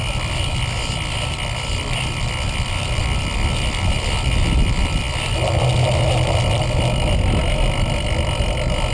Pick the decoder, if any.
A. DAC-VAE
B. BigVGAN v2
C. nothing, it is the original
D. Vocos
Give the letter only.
C